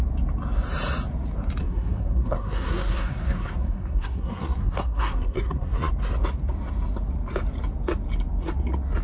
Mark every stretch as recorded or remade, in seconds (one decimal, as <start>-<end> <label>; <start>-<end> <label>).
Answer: 0.0-1.6 recorded; 1.6-5.9 remade; 5.9-9.0 recorded